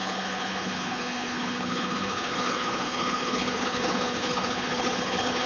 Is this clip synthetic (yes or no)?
yes